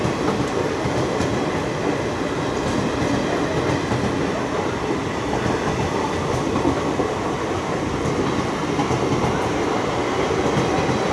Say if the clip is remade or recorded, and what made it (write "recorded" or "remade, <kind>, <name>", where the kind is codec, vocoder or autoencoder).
recorded